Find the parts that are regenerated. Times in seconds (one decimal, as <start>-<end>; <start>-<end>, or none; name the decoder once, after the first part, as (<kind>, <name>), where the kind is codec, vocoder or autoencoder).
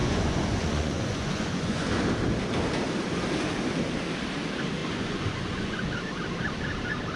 0.0-1.9 (vocoder, Vocos); 4.8-5.9